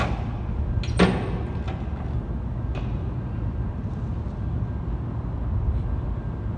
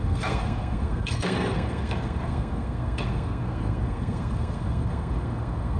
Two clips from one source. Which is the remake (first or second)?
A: second